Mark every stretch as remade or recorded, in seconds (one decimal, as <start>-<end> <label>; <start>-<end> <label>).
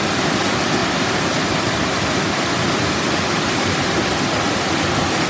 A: 0.0-0.8 recorded; 0.8-4.0 remade; 4.0-5.3 recorded